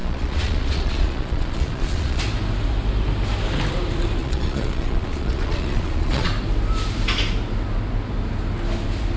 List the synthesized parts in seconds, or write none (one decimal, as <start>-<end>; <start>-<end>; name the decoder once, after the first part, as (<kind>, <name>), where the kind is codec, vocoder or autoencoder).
0.0-2.2 (vocoder, Vocos); 4.2-6.3